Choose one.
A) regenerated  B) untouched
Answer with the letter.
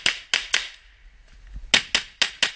B